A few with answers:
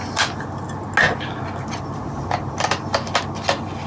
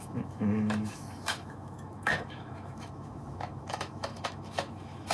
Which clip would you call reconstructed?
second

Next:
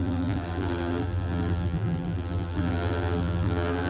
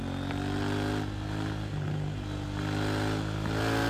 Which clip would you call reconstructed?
first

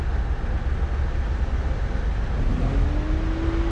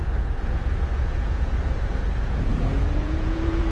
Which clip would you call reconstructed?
second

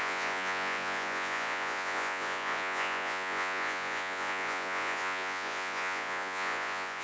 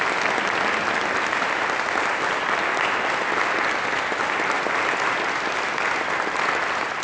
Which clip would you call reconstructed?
first